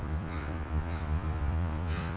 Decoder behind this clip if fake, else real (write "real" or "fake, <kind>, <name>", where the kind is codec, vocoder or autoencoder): fake, vocoder, Vocos